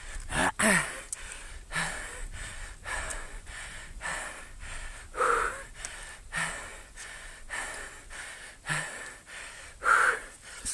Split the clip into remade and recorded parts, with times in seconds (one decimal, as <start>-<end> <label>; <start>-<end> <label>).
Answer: 0.0-3.1 recorded; 3.1-4.1 remade; 4.1-6.7 recorded; 6.7-7.3 remade; 7.3-10.7 recorded